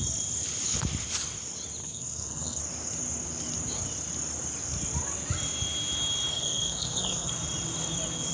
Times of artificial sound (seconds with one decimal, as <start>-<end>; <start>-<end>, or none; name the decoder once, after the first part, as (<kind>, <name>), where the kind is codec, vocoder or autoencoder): 1.8-2.6 (codec, SNAC); 6.3-7.3

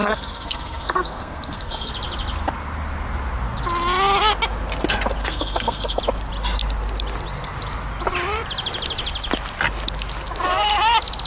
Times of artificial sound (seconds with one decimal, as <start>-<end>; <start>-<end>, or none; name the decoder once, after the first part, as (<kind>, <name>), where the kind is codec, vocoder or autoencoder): 0.0-1.9 (codec, SNAC); 5.2-6.0

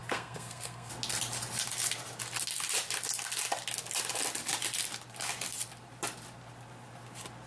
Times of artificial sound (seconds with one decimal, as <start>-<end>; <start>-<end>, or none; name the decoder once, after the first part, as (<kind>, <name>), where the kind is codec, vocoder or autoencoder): 0.0-0.9 (codec, SNAC)

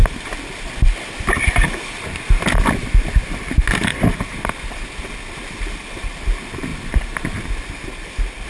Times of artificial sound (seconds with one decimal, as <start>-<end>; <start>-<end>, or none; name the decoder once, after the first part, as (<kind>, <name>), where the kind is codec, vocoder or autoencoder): none